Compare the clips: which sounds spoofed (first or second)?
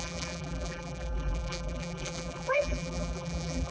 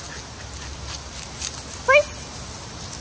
first